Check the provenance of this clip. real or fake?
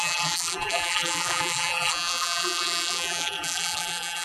fake